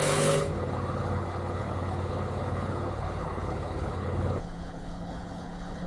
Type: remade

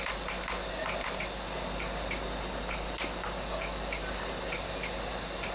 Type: recorded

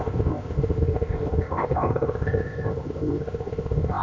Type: remade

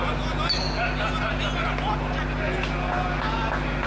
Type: recorded